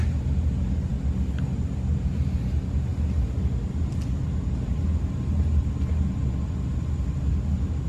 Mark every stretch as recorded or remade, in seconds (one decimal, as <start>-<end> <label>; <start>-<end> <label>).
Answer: 0.0-7.9 recorded